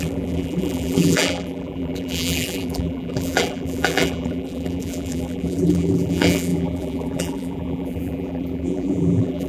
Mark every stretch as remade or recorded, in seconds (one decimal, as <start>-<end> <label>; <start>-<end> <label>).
0.0-9.5 remade